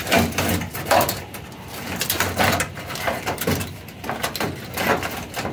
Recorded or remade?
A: recorded